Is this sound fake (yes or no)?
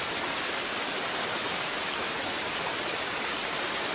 no